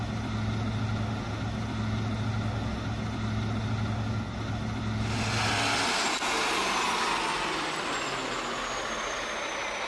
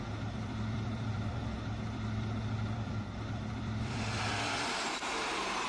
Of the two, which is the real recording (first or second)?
first